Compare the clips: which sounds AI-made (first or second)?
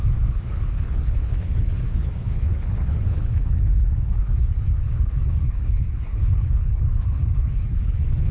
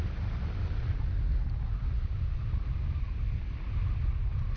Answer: first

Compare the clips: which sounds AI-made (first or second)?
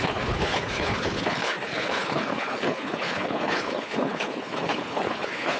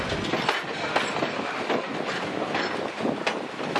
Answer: first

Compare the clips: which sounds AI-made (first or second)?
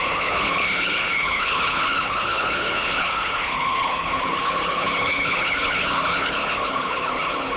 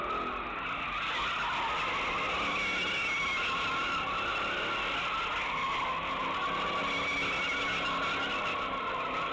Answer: first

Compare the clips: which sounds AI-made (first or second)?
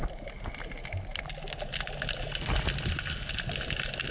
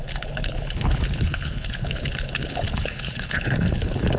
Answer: second